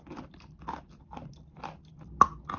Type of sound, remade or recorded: recorded